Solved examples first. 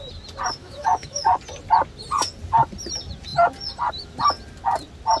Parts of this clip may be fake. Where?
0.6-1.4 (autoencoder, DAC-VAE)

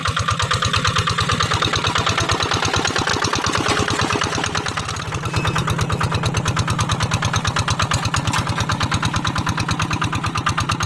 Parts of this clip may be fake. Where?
none